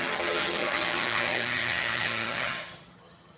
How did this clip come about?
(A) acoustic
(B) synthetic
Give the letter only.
B